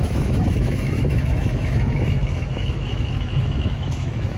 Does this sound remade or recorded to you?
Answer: remade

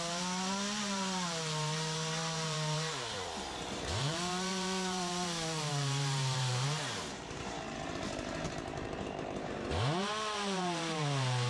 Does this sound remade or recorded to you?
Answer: remade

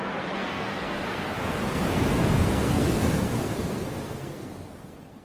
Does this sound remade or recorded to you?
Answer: remade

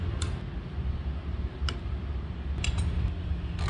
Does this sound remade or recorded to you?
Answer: recorded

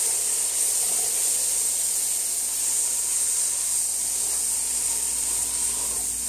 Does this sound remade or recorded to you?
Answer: recorded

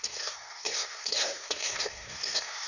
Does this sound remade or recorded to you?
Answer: remade